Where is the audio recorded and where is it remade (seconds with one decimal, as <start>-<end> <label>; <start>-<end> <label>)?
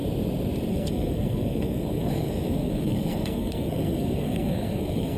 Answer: 0.0-0.7 recorded; 0.7-5.2 remade